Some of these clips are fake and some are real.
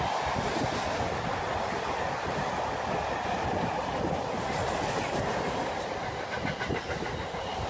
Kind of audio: real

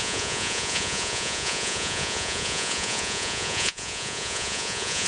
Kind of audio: fake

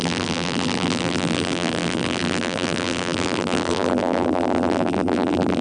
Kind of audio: fake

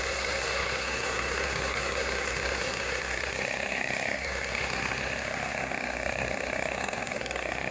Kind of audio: fake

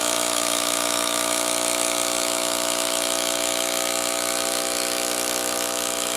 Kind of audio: fake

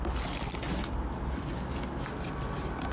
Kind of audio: real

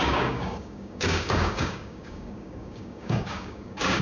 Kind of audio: fake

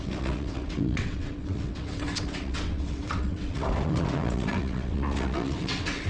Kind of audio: fake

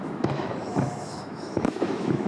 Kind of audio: fake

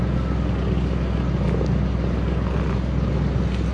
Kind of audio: real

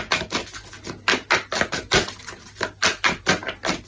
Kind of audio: real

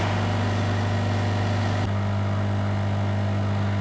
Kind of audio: real